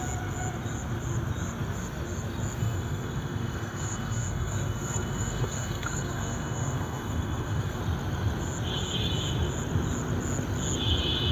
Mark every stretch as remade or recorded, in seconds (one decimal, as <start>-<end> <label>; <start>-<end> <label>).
0.0-2.6 recorded; 2.6-7.8 remade; 7.8-11.3 recorded